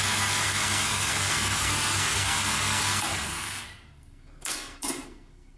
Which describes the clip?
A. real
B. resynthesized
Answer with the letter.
B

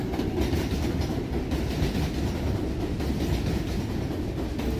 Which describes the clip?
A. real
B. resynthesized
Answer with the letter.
A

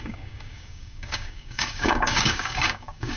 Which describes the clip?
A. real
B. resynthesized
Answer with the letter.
B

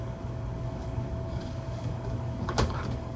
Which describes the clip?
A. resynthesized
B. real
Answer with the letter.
A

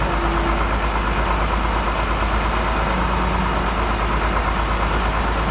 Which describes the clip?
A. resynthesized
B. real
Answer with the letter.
B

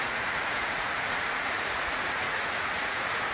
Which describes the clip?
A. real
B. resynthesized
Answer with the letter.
B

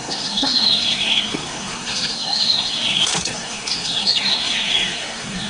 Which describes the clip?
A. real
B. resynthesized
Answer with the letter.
B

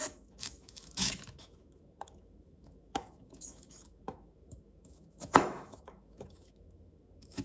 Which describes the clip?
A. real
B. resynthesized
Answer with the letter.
B